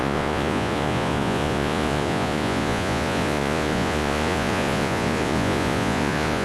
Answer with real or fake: fake